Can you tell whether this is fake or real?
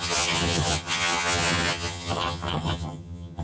fake